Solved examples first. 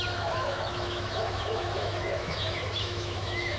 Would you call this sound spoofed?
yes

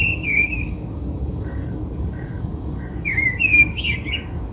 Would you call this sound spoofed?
yes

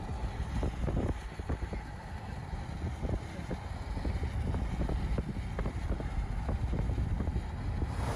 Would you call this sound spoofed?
no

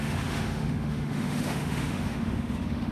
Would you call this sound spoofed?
yes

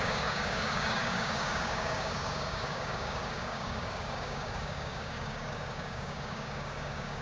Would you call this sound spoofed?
yes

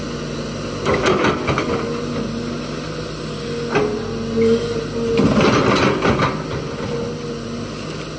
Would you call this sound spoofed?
no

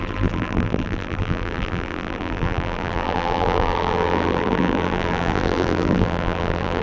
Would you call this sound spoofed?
yes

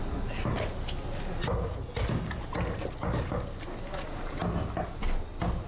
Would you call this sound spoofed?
no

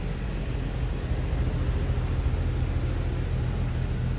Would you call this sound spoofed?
no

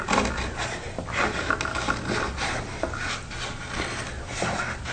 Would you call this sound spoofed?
no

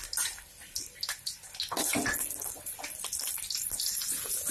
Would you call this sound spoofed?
no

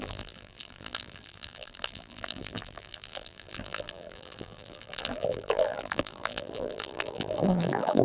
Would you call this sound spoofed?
yes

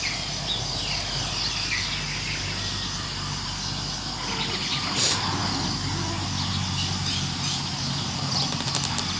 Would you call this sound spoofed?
no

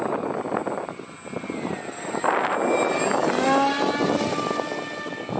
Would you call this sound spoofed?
no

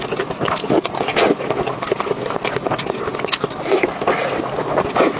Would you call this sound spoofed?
no